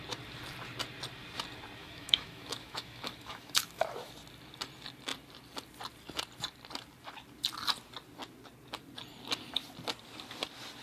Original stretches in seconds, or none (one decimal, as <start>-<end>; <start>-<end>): 0.0-1.8; 4.1-10.8